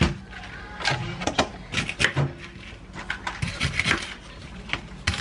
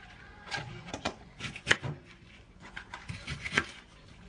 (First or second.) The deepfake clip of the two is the second